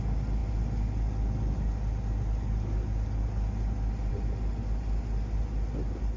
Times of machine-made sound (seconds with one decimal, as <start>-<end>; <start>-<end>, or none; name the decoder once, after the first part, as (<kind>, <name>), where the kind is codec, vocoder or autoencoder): none